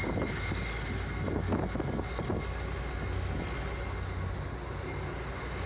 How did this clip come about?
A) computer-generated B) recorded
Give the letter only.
B